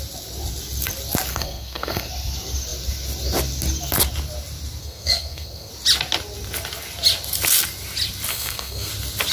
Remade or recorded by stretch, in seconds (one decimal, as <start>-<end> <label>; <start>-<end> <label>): 0.0-1.3 recorded; 1.3-2.1 remade; 2.1-4.8 recorded; 4.8-5.7 remade; 5.7-8.3 recorded; 8.3-8.9 remade; 8.9-9.3 recorded